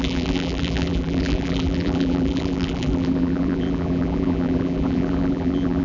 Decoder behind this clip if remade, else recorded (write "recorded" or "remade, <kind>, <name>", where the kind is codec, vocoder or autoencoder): remade, vocoder, BigVGAN v2